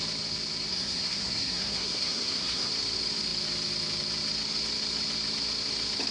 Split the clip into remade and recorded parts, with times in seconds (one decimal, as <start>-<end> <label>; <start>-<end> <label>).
0.0-0.7 recorded; 0.7-2.7 remade; 2.7-6.1 recorded